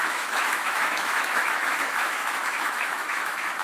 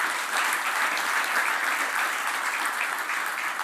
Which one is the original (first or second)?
second